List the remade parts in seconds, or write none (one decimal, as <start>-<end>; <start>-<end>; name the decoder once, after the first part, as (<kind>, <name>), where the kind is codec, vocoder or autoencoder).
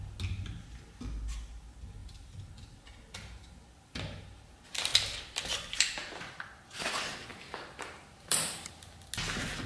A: 2.0-2.8 (vocoder, BigVGAN v2); 7.3-8.7